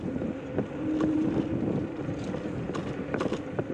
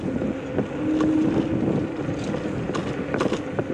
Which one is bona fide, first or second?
second